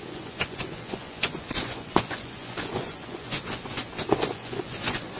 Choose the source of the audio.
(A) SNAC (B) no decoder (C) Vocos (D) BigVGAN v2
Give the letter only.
C